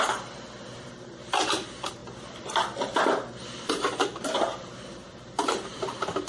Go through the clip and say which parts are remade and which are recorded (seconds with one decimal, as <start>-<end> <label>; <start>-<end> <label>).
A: 0.0-2.0 remade; 2.0-3.7 recorded; 3.7-6.3 remade